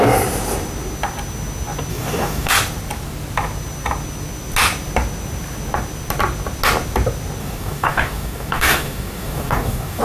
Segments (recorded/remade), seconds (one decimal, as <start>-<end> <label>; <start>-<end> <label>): 0.0-1.9 recorded; 1.9-2.5 remade; 2.5-7.4 recorded; 7.4-10.0 remade